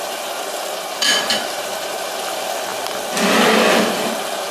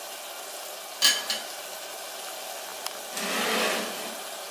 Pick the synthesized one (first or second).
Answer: first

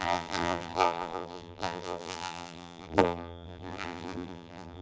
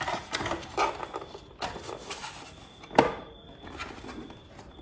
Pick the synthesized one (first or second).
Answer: first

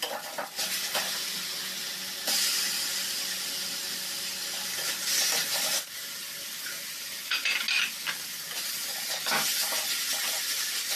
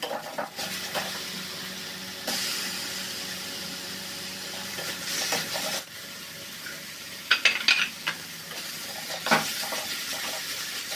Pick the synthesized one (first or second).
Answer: second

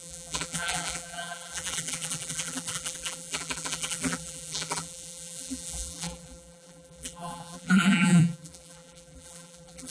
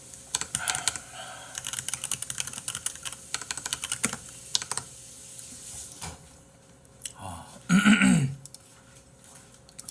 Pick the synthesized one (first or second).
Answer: first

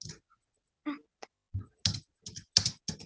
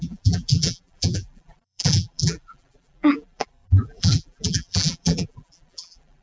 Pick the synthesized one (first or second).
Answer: second